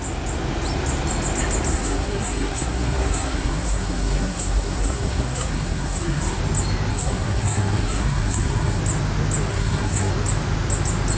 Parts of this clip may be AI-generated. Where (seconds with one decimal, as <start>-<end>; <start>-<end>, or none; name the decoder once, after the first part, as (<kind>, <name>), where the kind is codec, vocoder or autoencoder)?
1.7-6.4 (codec, SNAC); 6.9-8.8; 9.5-10.1